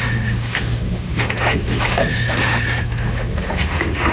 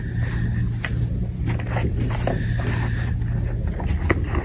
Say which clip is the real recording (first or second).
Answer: second